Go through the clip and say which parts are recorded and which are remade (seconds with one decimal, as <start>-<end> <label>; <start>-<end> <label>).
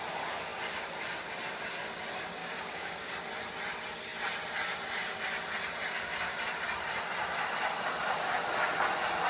0.0-2.4 recorded; 2.4-3.1 remade; 3.1-9.3 recorded